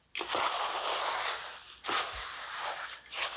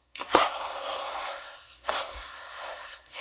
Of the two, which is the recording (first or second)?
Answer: first